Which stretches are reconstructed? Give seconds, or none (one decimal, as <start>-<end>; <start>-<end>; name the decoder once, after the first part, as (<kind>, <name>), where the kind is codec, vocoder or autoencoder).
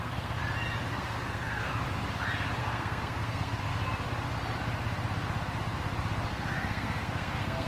0.0-0.4 (codec, SNAC); 0.9-1.7; 2.6-3.7; 6.3-7.7